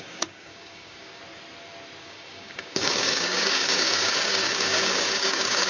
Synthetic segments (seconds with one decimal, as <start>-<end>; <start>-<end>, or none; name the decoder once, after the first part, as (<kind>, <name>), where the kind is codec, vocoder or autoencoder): 0.0-1.2 (codec, DAC); 2.0-5.7